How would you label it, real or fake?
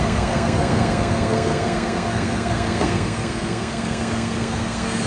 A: fake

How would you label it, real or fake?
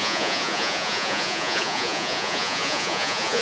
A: fake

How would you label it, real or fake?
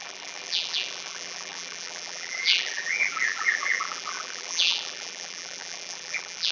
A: fake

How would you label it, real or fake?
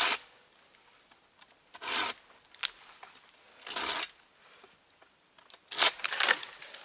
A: real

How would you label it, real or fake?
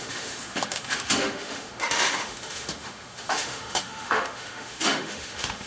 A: fake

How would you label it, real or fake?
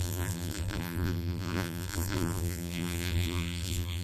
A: fake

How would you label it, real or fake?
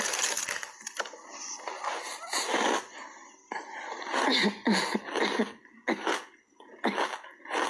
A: real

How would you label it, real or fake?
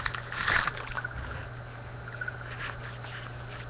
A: real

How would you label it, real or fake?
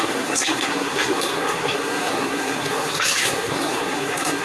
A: fake